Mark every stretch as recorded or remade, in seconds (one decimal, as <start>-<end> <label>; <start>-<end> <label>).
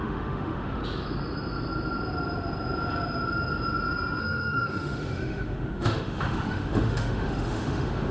0.0-0.8 remade; 0.8-4.2 recorded; 4.2-8.1 remade